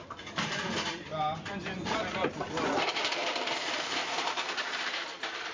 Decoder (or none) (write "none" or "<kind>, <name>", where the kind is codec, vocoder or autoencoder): vocoder, BigVGAN v2